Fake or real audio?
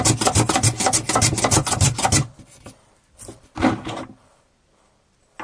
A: real